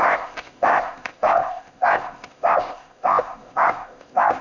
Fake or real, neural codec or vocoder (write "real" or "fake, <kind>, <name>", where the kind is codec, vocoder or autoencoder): fake, codec, ZipCodec